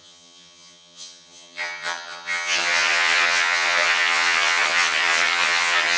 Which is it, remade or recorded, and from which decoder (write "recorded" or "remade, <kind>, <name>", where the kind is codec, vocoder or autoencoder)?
remade, vocoder, HiFi-GAN